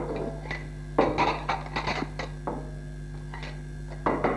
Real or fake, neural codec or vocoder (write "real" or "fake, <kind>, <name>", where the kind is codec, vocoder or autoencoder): real